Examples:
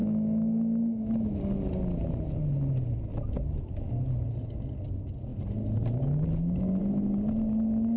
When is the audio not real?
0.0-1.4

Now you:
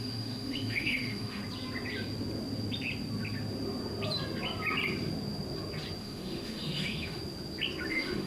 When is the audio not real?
0.0-1.4; 6.0-7.2; 7.9-8.3

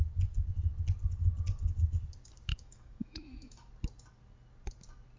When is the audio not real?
2.5-3.7

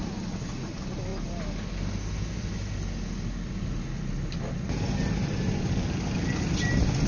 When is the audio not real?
none

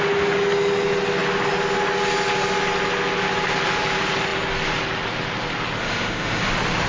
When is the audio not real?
5.8-6.5

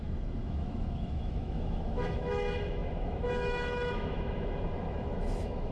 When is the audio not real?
0.0-5.7

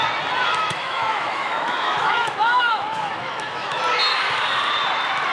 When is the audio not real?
0.6-3.8